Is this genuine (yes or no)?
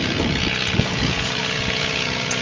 no